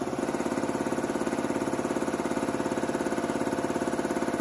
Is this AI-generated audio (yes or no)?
no